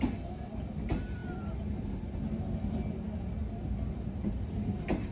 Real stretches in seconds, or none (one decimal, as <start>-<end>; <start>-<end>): 0.0-5.1